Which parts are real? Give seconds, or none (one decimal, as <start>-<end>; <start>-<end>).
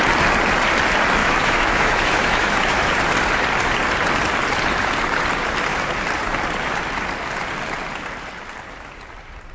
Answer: 0.0-1.2; 2.9-9.5